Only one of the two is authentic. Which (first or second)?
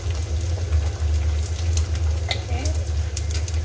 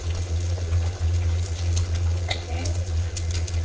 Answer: first